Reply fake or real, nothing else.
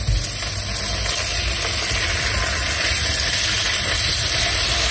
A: real